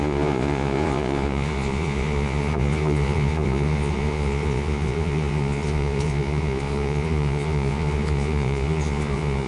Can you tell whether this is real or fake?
fake